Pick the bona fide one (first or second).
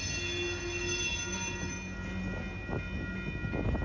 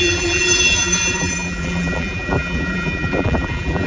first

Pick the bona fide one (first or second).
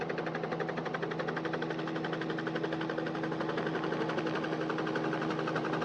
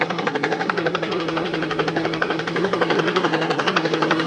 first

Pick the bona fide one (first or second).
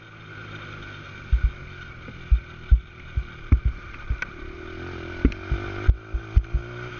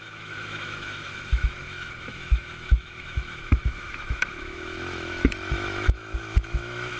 first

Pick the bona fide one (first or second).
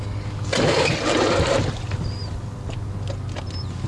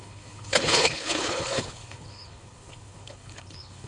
first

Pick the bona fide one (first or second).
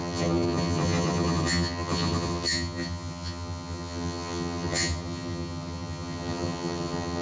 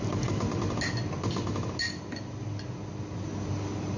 second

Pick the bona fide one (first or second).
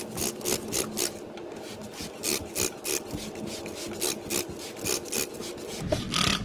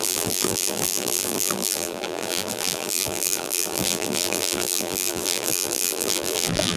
first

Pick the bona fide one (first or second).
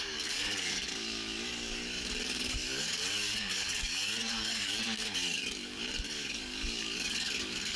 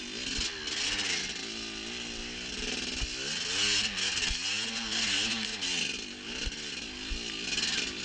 second